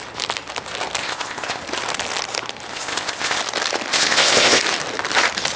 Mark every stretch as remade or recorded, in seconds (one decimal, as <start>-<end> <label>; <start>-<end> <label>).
0.0-1.0 recorded; 1.0-1.6 remade; 1.6-2.7 recorded; 2.7-3.4 remade; 3.4-3.9 recorded; 3.9-4.6 remade; 4.6-5.6 recorded